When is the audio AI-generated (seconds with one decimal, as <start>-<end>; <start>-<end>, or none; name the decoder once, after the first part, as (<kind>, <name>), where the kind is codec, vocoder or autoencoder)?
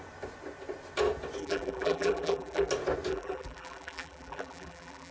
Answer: 1.4-2.7 (vocoder, BigVGAN v2); 3.1-5.1